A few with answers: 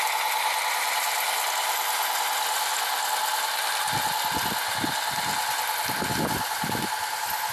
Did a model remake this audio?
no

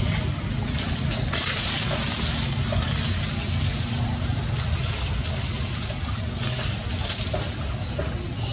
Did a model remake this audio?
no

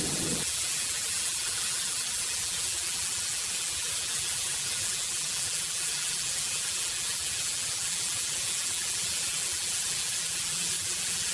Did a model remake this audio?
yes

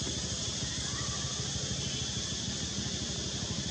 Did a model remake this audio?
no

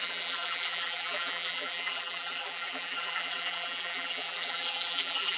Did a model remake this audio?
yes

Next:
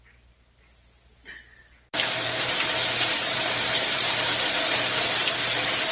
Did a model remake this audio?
no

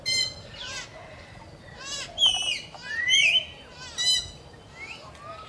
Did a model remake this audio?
no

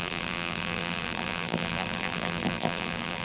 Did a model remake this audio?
yes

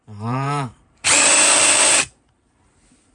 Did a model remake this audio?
yes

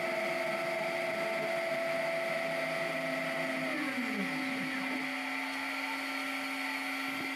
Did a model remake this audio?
no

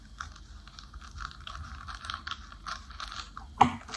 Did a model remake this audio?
no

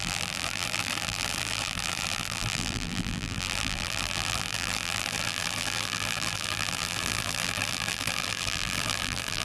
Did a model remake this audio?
yes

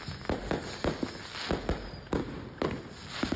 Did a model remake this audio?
no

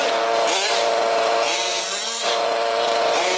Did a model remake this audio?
yes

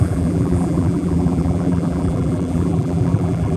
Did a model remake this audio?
yes